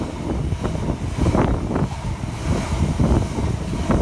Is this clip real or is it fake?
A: real